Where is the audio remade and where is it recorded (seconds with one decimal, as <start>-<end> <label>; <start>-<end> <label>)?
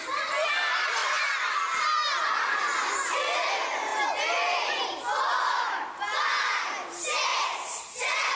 0.0-1.0 recorded; 1.0-2.2 remade; 2.2-7.3 recorded; 7.3-8.3 remade